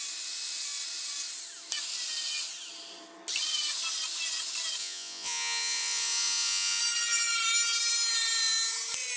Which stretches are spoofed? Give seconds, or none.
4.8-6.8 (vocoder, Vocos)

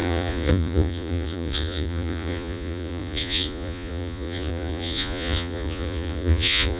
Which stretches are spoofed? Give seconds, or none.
0.0-6.8 (vocoder, Vocos)

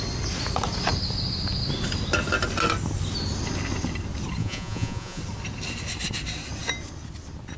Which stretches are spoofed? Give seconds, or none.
4.4-5.2 (vocoder, Vocos)

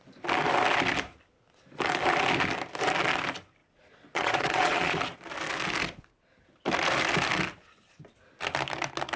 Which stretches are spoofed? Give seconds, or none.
3.6-5.0 (vocoder, Vocos)

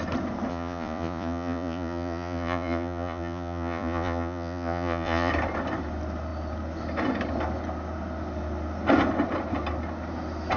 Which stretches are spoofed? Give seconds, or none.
0.5-5.3 (vocoder, Vocos)

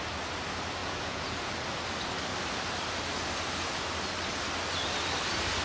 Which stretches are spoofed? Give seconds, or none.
0.8-1.5 (vocoder, Vocos)

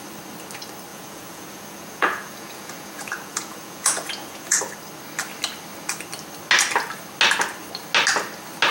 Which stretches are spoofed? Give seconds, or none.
0.9-4.6 (vocoder, Vocos)

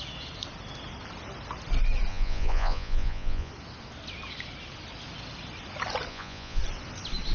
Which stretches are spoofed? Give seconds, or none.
2.1-3.5 (vocoder, Vocos); 6.1-6.6